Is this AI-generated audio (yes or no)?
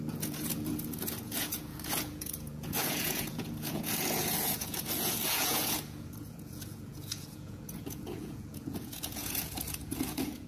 yes